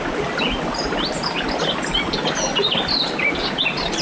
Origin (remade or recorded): recorded